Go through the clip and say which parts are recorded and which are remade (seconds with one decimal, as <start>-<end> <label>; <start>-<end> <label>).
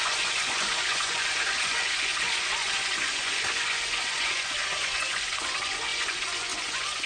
0.0-7.1 remade